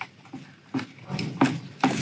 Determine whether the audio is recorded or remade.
recorded